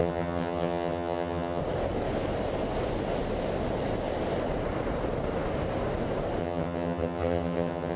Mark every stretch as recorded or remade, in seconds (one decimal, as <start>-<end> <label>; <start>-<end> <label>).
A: 0.0-1.6 remade; 1.6-6.4 recorded; 6.4-8.0 remade